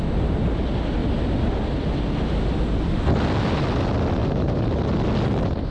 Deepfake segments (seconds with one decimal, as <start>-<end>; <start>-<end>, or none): 4.2-4.8